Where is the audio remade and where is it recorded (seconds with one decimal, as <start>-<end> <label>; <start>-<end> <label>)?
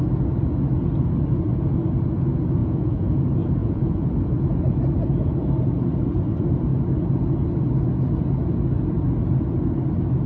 0.0-2.6 recorded; 2.6-3.2 remade; 3.2-3.6 recorded; 3.6-4.1 remade; 4.1-10.3 recorded